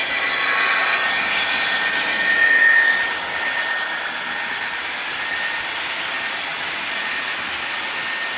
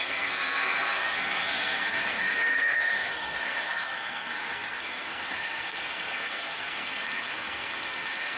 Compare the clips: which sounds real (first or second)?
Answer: first